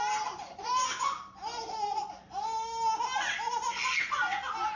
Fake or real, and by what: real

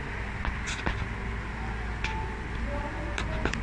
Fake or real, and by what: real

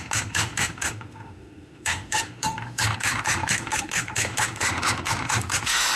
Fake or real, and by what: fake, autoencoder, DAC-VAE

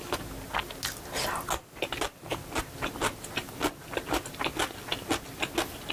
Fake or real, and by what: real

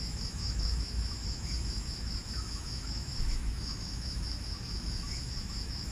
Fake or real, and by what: fake, autoencoder, DAC-VAE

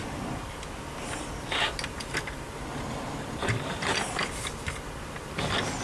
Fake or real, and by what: real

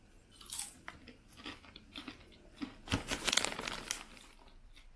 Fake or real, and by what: real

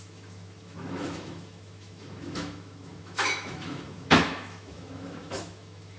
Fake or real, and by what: fake, autoencoder, DAC-VAE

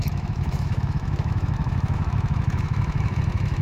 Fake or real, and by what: fake, autoencoder, DAC-VAE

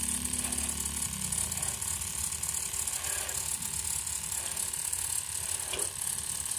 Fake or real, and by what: real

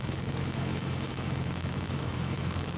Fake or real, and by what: fake, autoencoder, DAC-VAE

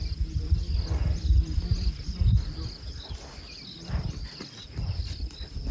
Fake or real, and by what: real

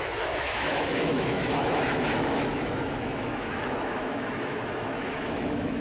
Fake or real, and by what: fake, autoencoder, DAC-VAE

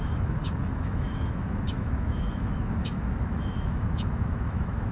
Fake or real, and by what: fake, autoencoder, DAC-VAE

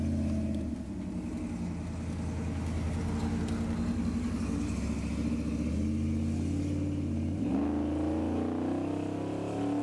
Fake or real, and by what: real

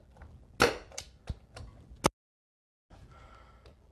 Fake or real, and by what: real